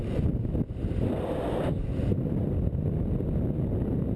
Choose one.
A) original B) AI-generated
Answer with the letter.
A